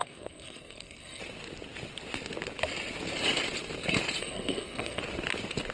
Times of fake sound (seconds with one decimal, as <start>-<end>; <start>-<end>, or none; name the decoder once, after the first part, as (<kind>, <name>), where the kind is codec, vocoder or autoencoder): 0.0-1.2 (codec, SNAC); 4.2-5.0